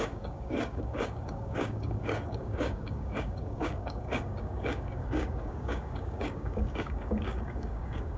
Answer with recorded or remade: remade